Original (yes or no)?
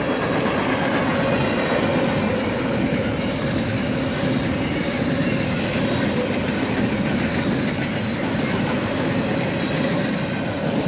yes